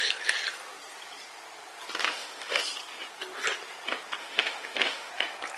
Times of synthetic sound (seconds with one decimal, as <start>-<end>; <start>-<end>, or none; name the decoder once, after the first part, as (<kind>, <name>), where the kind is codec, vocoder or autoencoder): 2.0-2.6 (autoencoder, DAC-VAE); 4.2-5.1